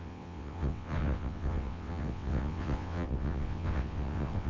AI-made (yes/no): yes